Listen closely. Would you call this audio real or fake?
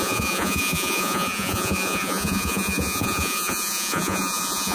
fake